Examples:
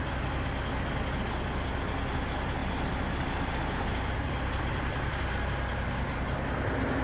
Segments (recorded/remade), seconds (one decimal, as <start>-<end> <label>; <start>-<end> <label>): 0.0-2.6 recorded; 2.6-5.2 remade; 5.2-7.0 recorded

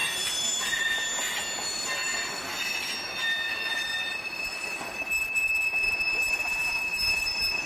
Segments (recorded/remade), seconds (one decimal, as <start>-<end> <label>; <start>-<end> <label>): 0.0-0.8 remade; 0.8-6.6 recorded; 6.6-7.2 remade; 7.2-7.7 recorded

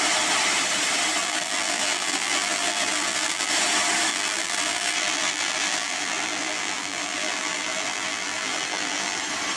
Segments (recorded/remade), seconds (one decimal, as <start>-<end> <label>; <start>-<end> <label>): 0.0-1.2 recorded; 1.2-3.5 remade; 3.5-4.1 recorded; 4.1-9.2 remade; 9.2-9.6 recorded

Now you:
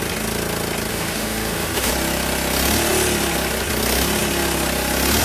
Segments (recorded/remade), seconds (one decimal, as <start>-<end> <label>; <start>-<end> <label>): 0.0-0.9 recorded; 0.9-1.9 remade; 1.9-5.2 recorded

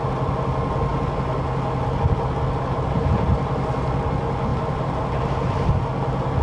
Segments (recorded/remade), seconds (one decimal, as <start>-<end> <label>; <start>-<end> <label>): 0.0-6.4 recorded

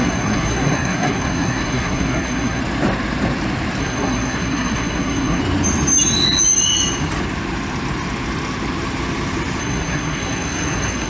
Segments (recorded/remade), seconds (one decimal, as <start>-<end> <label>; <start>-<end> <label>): 0.0-2.6 remade; 2.6-3.8 recorded; 3.8-5.4 remade; 5.4-9.6 recorded; 9.6-11.1 remade

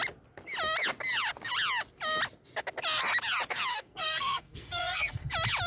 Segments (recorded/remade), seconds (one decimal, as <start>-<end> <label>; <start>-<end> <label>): 0.0-3.7 recorded; 3.7-5.3 remade; 5.3-5.7 recorded

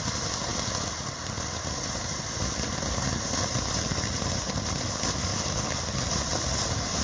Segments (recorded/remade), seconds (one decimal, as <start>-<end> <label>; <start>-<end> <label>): 0.0-5.3 recorded; 5.3-5.8 remade; 5.8-7.0 recorded